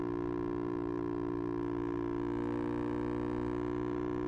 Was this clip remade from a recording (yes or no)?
no